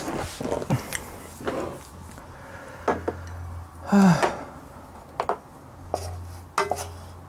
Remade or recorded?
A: recorded